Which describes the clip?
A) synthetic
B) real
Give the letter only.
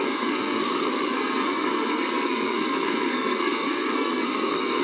A